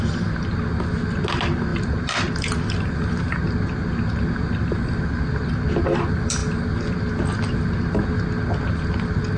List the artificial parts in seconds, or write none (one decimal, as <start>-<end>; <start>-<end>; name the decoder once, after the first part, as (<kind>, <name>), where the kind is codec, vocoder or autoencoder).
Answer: 1.7-2.3 (vocoder, BigVGAN v2)

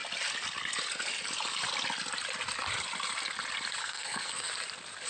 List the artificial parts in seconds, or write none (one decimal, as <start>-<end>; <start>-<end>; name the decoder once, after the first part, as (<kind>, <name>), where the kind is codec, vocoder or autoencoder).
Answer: 3.8-4.5 (codec, SNAC)

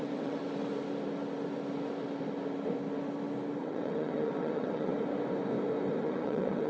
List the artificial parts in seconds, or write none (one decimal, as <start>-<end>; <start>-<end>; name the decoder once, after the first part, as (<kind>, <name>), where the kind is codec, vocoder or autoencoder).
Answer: 0.0-0.4 (vocoder, WaveNeXt); 3.6-4.9; 6.0-6.7

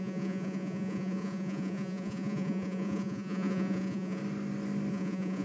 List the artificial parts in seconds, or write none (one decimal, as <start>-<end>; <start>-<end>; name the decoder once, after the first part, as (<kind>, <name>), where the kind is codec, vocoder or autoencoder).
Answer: 0.0-4.2 (vocoder, Vocos); 4.9-5.4

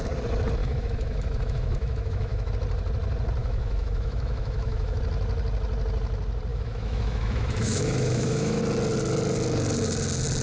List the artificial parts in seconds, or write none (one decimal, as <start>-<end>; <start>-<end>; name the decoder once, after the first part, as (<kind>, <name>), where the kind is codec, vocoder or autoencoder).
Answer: 0.6-2.5 (autoencoder, DAC-VAE); 3.4-5.0; 6.5-8.6

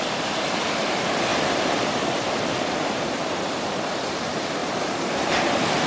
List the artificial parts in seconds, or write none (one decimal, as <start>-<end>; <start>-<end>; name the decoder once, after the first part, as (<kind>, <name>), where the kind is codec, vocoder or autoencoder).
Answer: 0.0-5.9 (vocoder, BigVGAN v2)

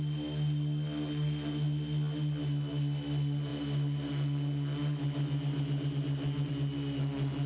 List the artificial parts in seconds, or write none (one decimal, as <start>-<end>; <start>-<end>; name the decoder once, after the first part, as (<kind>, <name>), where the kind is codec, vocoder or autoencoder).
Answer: none

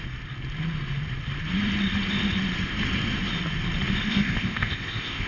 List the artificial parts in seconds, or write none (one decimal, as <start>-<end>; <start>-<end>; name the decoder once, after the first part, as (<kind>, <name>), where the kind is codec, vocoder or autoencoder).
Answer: 4.1-5.3 (codec, ZipCodec)